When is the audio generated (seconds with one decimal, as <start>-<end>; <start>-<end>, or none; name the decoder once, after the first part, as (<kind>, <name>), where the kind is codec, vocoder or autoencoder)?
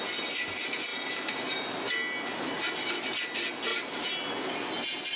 0.9-1.8 (vocoder, BigVGAN v2); 3.7-4.3